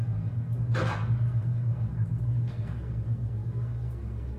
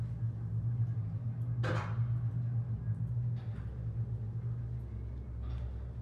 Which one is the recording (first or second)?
second